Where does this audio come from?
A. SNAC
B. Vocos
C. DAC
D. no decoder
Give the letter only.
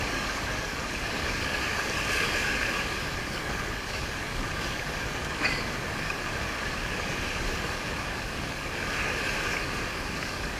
C